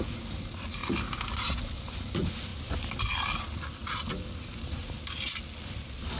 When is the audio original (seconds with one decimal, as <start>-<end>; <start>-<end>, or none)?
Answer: 0.0-6.2